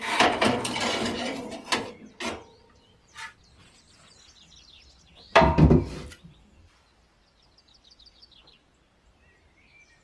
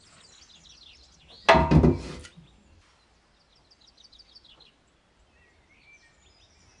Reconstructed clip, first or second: first